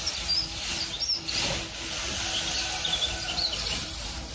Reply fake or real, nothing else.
real